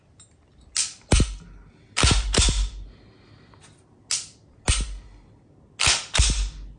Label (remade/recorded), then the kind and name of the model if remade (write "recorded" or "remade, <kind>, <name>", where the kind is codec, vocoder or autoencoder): recorded